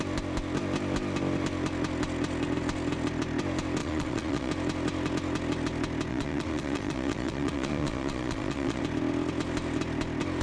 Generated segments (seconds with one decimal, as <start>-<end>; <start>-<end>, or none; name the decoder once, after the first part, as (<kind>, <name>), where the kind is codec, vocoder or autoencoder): 3.8-4.5 (vocoder, Vocos); 6.1-8.8